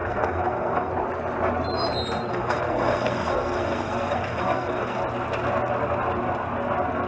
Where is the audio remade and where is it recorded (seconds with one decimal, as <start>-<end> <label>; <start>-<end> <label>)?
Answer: 0.0-0.9 remade; 0.9-2.3 recorded; 2.3-5.0 remade; 5.0-7.1 recorded